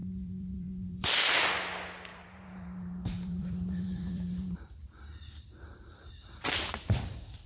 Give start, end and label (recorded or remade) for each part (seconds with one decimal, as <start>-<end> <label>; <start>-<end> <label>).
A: 0.0-1.5 remade; 1.5-2.1 recorded; 2.1-6.6 remade; 6.6-7.5 recorded